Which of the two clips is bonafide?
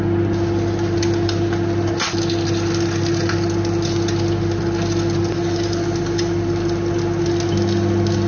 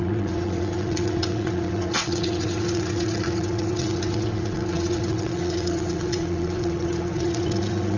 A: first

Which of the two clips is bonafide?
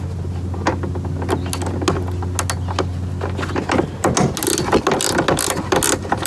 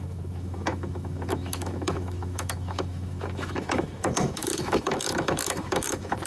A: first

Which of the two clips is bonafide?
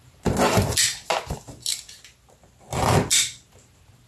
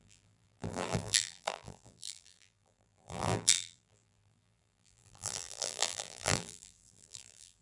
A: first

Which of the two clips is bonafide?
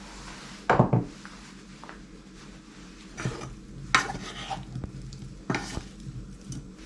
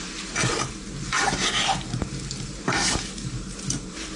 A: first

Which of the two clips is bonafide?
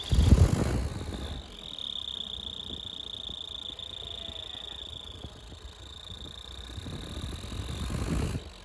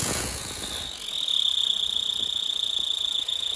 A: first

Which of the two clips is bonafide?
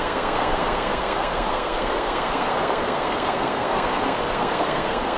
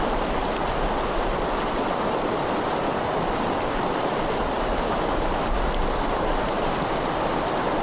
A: second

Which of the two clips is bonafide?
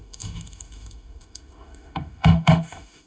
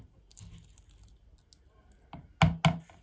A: second